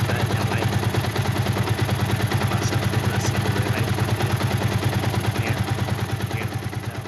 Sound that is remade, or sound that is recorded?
recorded